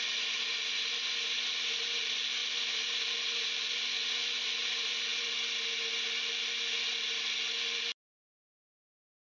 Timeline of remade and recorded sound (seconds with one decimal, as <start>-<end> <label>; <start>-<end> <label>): 0.0-9.3 recorded